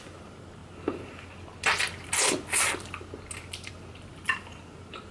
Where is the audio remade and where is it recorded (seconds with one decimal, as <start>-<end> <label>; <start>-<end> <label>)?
0.0-5.1 recorded